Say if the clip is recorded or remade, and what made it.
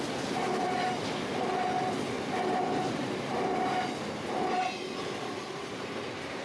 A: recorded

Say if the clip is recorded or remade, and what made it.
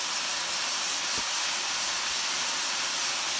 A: recorded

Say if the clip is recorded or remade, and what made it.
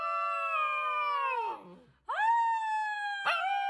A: recorded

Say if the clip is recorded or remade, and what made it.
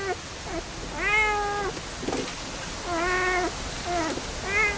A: recorded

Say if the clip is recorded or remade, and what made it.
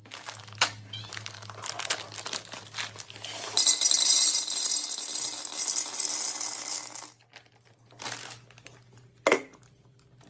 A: recorded